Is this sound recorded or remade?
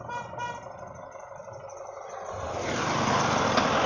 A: recorded